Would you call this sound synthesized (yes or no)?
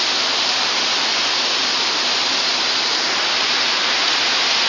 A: no